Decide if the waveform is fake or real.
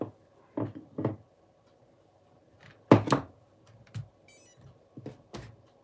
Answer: real